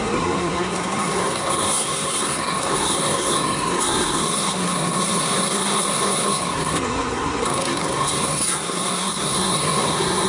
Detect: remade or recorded remade